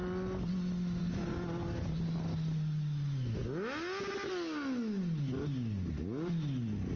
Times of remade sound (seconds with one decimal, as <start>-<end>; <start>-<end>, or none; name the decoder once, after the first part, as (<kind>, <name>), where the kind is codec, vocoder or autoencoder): none